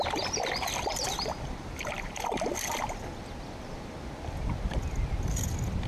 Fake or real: real